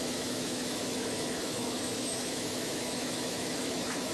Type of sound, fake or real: fake